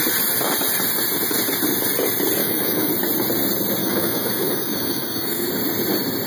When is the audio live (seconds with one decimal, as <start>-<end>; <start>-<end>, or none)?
0.0-2.4; 2.9-3.8; 5.5-6.3